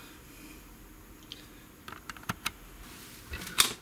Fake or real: real